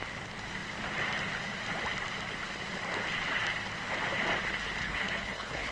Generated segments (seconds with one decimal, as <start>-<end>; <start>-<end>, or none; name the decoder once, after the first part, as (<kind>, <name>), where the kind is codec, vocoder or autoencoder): 4.8-5.7 (codec, HILCodec)